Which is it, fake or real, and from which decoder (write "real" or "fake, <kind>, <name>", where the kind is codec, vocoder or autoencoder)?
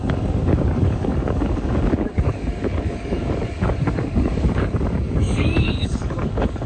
fake, codec, DAC